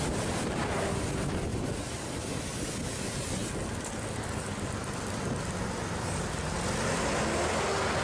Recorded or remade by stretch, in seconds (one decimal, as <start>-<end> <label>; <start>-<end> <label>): 0.0-1.5 recorded; 1.5-2.8 remade; 2.8-8.0 recorded

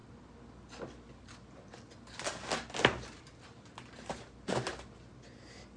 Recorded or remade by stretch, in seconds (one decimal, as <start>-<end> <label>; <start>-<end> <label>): 0.0-5.8 recorded

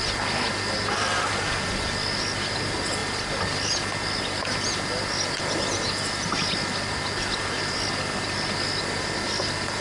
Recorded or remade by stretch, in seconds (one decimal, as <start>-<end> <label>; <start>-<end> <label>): 0.0-9.8 recorded

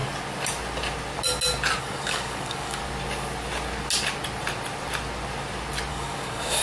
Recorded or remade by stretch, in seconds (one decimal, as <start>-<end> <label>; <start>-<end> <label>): 0.0-1.8 recorded; 1.8-2.8 remade; 2.8-5.9 recorded; 5.9-6.6 remade

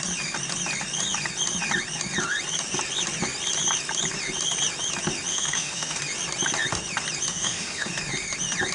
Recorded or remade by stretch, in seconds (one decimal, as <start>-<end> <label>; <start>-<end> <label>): 0.0-5.3 recorded; 5.3-6.0 remade; 6.0-7.3 recorded; 7.3-7.9 remade; 7.9-8.7 recorded

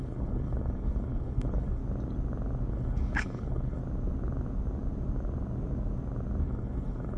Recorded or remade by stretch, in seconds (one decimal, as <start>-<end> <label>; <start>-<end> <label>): 0.0-1.8 remade; 1.8-2.7 recorded; 2.7-3.8 remade; 3.8-6.4 recorded; 6.4-7.2 remade